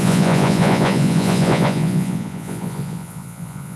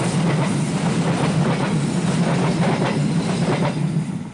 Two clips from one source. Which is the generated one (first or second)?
first